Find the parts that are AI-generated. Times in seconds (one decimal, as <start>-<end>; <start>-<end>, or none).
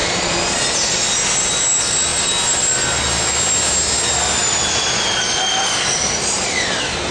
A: 0.0-0.6